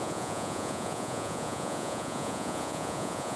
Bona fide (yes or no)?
no